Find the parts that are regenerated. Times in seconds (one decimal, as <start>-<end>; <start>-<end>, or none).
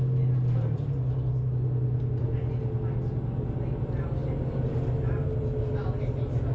none